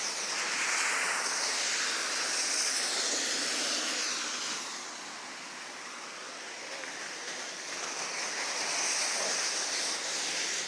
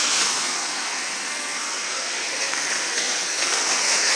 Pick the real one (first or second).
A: first